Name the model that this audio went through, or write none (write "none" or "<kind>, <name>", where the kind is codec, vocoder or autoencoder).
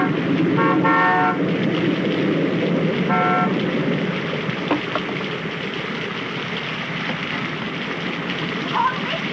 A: none